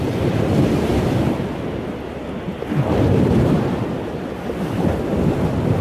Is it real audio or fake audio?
real